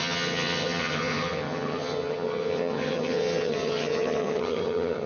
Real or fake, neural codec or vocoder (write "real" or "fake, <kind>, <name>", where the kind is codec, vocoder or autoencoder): fake, vocoder, HiFi-GAN